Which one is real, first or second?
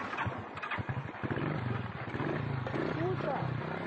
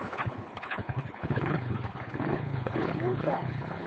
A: first